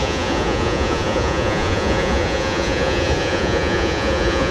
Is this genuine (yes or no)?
no